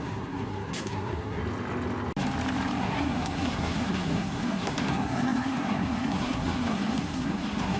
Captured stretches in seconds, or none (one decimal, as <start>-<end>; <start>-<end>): 1.4-2.8

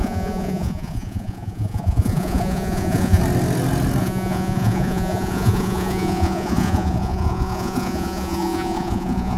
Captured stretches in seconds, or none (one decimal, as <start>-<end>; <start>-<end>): 3.2-4.0

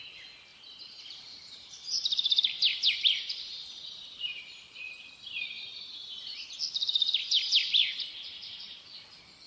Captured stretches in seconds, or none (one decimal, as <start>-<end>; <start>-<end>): 0.0-0.5; 5.1-5.7; 6.2-9.5

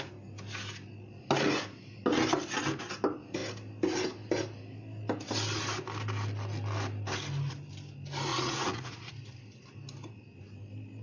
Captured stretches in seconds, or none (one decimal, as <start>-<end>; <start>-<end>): 0.0-8.3; 9.1-11.0

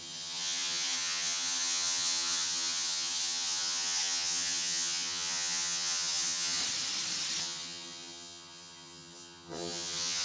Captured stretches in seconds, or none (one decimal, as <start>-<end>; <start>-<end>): 6.6-7.4

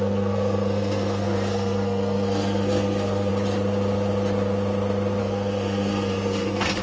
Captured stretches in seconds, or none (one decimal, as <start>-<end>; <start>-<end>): 3.3-5.2